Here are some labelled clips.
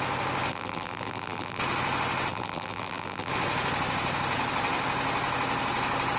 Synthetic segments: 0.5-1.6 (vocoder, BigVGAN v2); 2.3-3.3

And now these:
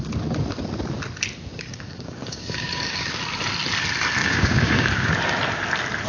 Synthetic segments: 1.4-3.2 (codec, DAC); 4.2-5.1

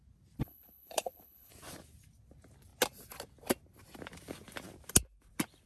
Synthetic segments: 0.4-1.5 (codec, HILCodec)

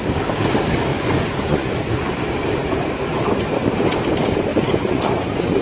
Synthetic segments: 0.9-2.1 (vocoder, Vocos); 4.5-5.6

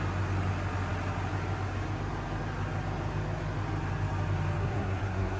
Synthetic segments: 4.6-5.4 (codec, SNAC)

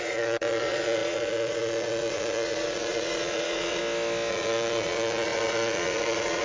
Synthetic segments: 0.0-3.8 (vocoder, Vocos); 4.3-6.4

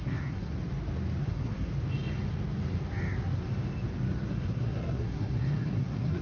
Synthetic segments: 0.0-0.5 (codec, SNAC); 1.2-1.7; 4.3-6.2

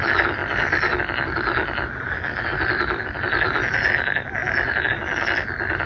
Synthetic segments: none